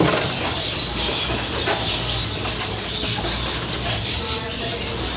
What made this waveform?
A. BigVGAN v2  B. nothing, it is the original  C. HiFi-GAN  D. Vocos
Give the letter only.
B